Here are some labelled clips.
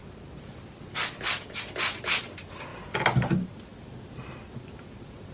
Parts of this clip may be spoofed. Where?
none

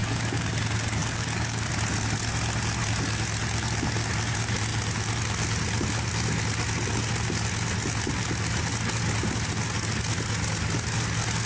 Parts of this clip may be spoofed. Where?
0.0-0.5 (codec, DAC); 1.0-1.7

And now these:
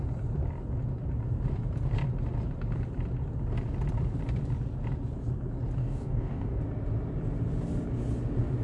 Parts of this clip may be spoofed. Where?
5.8-6.6 (codec, DAC)

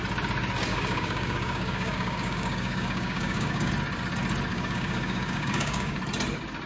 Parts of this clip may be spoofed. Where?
0.7-3.7 (codec, DAC); 4.5-6.0